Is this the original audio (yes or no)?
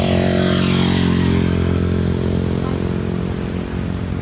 yes